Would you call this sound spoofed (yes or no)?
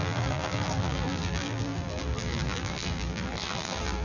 yes